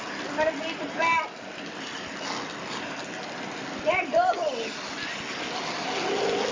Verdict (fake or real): real